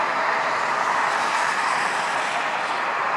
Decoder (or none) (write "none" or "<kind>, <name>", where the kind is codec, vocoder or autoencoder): none